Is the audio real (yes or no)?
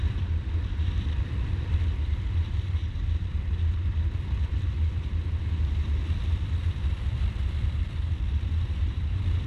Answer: no